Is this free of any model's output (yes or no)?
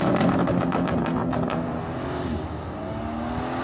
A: yes